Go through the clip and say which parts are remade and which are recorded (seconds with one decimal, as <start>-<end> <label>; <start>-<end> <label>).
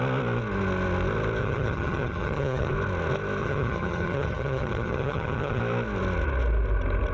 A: 0.0-1.4 recorded; 1.4-2.7 remade; 2.7-3.4 recorded; 3.4-5.6 remade; 5.6-7.1 recorded